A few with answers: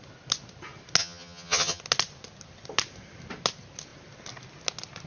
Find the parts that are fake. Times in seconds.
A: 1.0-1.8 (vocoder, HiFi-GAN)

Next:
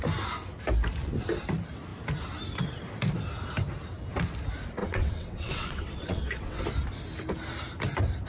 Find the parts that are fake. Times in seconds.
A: 4.8-6.6 (vocoder, WaveNeXt)

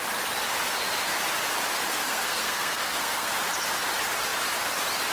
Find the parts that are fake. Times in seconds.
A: 1.9-3.3 (codec, SNAC)

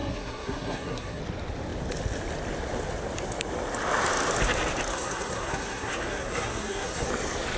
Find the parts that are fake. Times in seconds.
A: 0.0-1.2 (codec, SNAC); 4.9-7.1

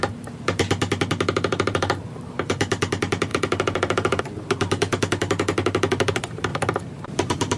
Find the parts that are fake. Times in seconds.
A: 1.5-2.5 (vocoder, BigVGAN v2); 3.3-4.2; 6.5-7.6

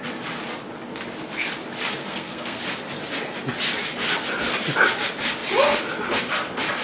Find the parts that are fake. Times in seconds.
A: 2.0-2.6 (codec, SNAC)